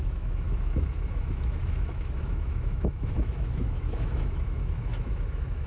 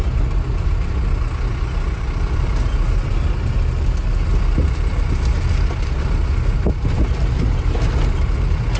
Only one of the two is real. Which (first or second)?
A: second